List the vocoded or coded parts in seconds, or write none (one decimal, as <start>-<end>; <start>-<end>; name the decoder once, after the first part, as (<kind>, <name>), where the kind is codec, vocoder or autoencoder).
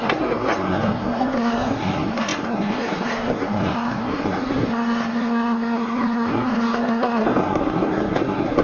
0.0-8.6 (codec, SNAC)